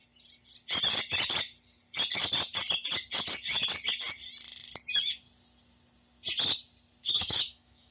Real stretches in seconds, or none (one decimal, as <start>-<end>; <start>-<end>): 0.0-7.0